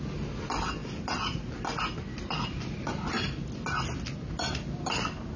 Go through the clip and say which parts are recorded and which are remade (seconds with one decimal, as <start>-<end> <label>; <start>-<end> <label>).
0.0-5.4 recorded